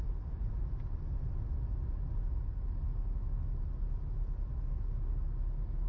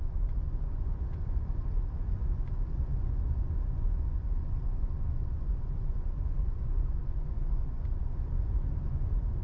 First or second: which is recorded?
first